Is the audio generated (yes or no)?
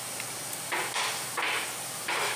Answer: no